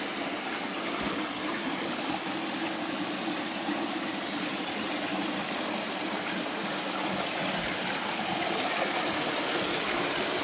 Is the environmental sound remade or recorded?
recorded